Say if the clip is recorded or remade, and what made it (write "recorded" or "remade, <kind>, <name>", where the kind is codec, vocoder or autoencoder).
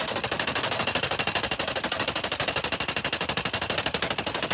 recorded